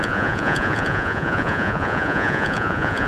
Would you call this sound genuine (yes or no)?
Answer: no